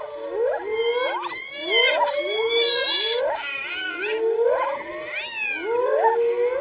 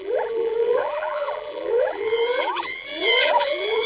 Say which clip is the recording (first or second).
first